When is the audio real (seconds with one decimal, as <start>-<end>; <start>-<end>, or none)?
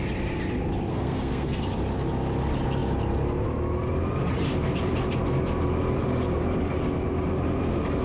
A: 0.0-0.9; 1.6-8.0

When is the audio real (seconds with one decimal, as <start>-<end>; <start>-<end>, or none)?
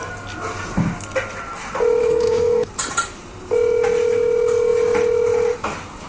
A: 0.0-2.0; 2.7-6.1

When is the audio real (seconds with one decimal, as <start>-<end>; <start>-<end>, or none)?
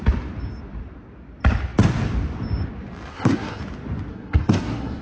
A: 0.0-3.1; 3.6-4.1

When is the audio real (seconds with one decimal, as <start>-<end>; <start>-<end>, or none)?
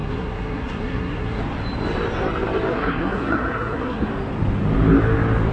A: 1.4-2.7; 4.1-5.5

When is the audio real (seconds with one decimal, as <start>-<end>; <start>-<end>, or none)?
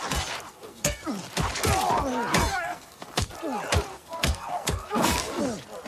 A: 0.0-0.5; 1.0-2.5; 3.3-3.9; 5.4-5.9